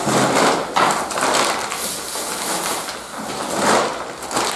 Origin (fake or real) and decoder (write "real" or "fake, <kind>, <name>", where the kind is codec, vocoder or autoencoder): real